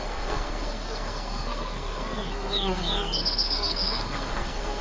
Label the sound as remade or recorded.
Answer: remade